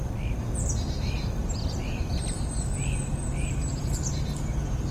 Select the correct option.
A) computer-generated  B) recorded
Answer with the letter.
B